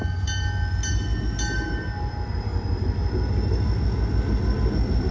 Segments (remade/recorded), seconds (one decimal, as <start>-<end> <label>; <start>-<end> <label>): 0.0-5.1 recorded